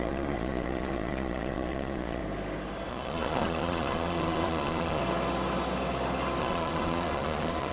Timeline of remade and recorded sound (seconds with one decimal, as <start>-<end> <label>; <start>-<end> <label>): 0.0-2.2 remade; 2.2-2.9 recorded; 2.9-5.0 remade; 5.0-6.4 recorded; 6.4-7.7 remade